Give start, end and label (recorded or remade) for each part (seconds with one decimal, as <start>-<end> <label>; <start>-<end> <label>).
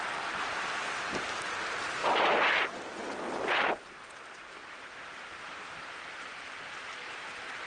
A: 0.0-7.7 recorded